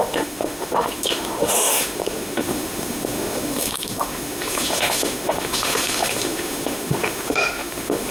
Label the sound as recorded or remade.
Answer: remade